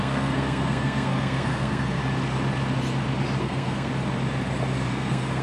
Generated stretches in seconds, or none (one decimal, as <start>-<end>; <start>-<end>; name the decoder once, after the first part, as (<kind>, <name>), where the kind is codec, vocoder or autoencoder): 0.0-2.0 (codec, SNAC); 3.4-3.9; 4.9-5.4

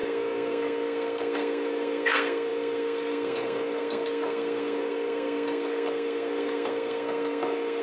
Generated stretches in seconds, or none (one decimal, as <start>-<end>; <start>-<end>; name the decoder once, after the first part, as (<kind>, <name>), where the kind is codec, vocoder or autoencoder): 0.0-7.8 (codec, SNAC)

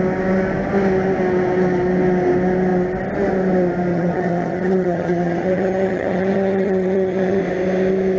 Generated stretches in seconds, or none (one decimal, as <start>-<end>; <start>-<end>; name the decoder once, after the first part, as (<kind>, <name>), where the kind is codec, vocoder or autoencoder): 3.9-7.4 (vocoder, HiFi-GAN)

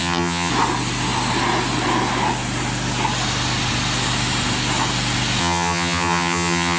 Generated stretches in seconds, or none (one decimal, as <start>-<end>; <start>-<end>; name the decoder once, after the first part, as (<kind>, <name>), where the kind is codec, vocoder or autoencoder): 0.0-0.5 (vocoder, HiFi-GAN); 5.4-6.8

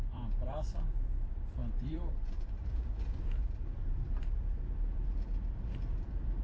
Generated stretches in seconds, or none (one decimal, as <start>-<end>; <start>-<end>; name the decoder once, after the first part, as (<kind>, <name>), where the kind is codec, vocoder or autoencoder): 0.0-6.4 (vocoder, BigVGAN v2)

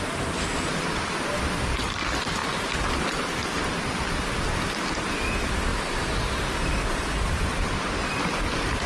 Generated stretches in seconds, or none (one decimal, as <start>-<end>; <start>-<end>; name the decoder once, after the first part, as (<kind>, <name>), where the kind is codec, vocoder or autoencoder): none